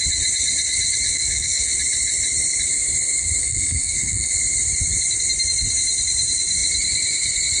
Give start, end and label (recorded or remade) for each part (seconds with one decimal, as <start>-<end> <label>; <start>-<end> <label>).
0.0-1.1 recorded; 1.1-1.7 remade; 1.7-3.4 recorded; 3.4-4.3 remade; 4.3-7.6 recorded